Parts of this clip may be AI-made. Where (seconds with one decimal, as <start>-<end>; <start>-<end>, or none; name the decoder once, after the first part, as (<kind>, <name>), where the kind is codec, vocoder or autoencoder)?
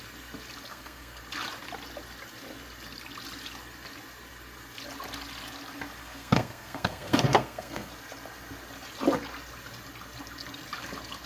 0.7-1.2 (codec, SNAC); 6.0-7.9